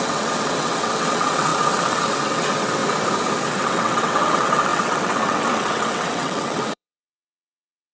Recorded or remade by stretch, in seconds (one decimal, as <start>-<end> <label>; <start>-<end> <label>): 0.0-2.8 remade; 2.8-3.5 recorded; 3.5-7.9 remade